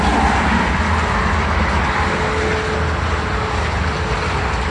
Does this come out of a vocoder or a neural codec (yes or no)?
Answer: no